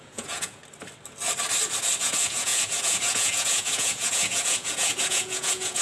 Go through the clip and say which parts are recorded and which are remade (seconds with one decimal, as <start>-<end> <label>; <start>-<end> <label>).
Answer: 0.0-0.6 remade; 0.6-2.0 recorded; 2.0-5.8 remade